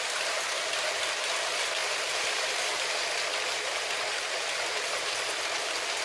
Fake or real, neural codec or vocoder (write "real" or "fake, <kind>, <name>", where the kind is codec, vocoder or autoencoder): real